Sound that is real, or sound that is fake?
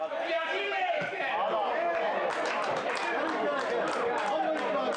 real